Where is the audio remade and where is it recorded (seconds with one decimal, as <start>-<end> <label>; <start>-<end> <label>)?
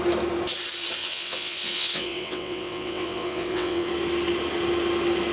0.0-1.0 recorded; 1.0-3.9 remade; 3.9-5.3 recorded